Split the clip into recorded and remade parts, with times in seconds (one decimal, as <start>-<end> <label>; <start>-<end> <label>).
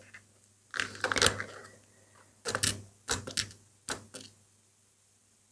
0.0-5.5 recorded